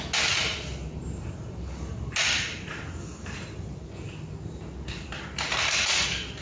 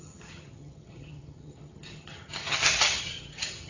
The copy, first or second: second